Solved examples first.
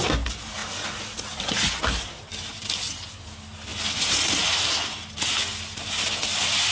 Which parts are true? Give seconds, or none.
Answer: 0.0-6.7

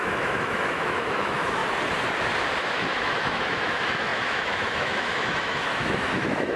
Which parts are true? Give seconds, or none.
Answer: 1.6-2.6

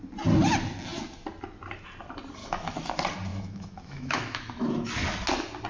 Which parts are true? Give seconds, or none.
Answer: 0.0-2.4; 2.9-3.3; 4.9-5.7